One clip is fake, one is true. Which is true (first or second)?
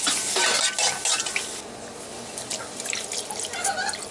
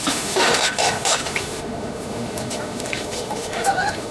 first